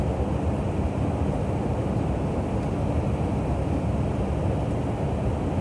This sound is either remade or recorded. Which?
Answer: recorded